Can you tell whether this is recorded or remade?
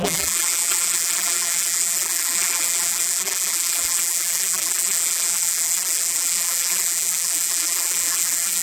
remade